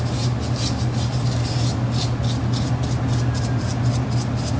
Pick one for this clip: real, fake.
real